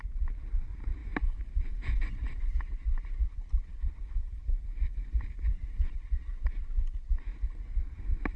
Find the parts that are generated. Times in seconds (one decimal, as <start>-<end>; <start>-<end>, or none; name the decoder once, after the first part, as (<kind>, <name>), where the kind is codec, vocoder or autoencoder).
5.0-5.8 (vocoder, BigVGAN v2)